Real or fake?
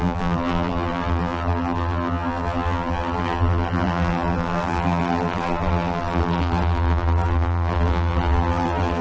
fake